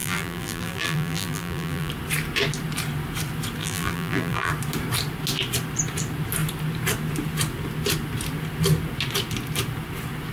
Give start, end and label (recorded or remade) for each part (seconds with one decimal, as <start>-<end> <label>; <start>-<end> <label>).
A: 0.0-1.9 remade; 1.9-3.6 recorded; 3.6-4.5 remade; 4.5-10.3 recorded